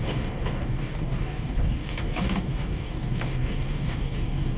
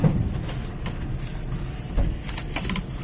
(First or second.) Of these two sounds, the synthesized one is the first